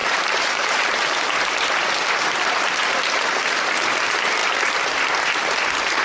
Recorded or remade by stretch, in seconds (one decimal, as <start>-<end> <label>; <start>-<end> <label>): 0.0-0.8 remade; 0.8-6.0 recorded